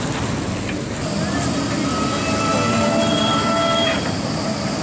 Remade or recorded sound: recorded